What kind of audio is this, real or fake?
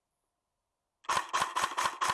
real